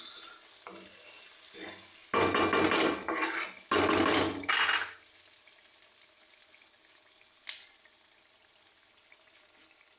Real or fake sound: real